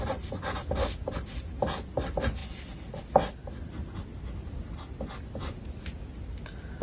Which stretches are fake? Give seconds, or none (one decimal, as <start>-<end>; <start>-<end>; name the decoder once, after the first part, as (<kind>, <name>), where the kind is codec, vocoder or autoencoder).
none